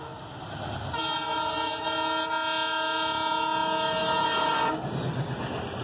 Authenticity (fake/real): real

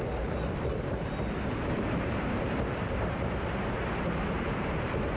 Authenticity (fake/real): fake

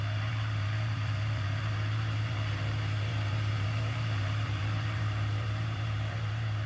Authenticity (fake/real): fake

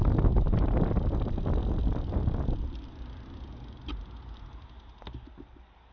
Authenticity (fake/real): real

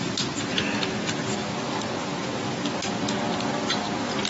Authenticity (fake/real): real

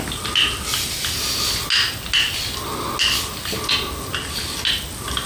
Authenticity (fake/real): real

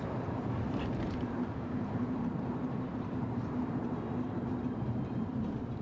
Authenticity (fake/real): fake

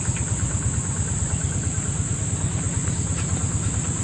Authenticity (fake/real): real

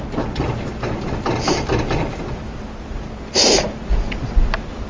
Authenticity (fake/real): real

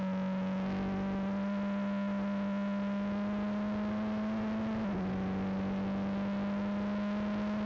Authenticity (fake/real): real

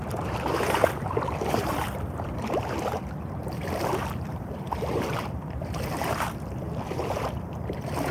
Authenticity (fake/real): fake